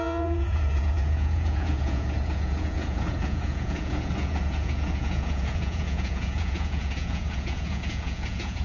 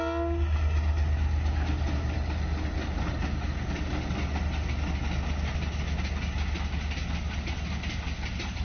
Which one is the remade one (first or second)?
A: first